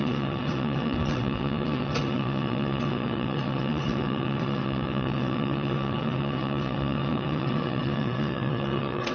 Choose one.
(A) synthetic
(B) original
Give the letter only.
A